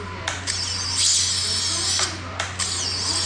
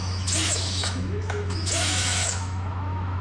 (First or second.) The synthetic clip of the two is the second